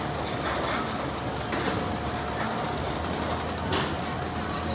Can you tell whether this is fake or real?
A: real